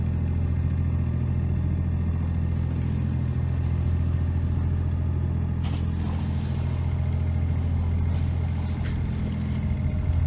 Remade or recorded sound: recorded